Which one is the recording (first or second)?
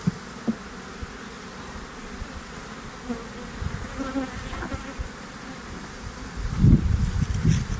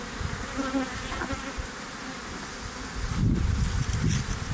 second